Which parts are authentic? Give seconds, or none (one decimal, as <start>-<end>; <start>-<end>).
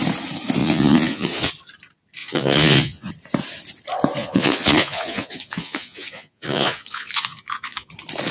0.0-0.6; 1.5-2.2; 3.1-4.2; 7.9-8.3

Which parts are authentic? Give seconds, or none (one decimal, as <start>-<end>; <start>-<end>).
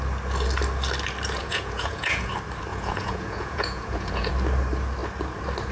0.0-1.4; 2.3-2.7; 4.3-5.7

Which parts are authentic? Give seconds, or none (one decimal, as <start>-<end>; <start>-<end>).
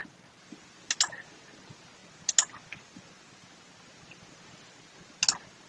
0.0-5.7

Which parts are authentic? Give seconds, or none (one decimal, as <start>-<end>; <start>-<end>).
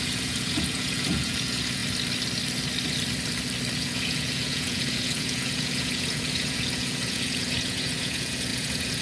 1.8-3.8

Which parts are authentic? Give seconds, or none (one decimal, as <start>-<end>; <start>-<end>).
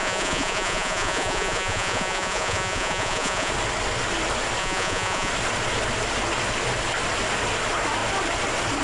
3.5-4.6; 5.3-8.8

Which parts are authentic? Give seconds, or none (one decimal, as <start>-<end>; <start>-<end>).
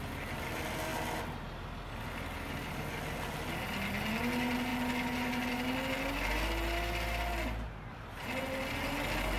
0.0-9.4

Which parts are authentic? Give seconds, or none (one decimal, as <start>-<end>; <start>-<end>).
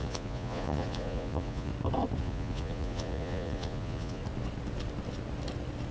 1.7-2.2; 4.2-5.9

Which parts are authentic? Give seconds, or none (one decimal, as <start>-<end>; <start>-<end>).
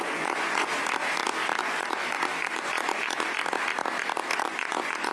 0.7-1.6; 3.4-4.4